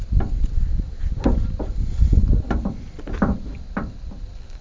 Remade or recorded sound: recorded